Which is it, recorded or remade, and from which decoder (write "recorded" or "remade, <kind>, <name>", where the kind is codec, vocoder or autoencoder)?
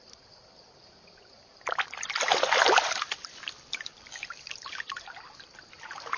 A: remade, vocoder, BigVGAN v2